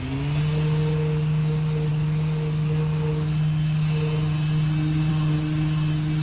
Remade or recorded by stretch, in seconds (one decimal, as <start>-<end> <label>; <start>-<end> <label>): 0.0-6.2 recorded